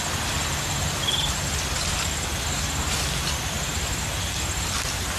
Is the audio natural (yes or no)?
yes